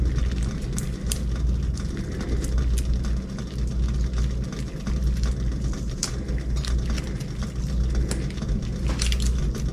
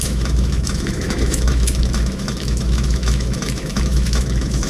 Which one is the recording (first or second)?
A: first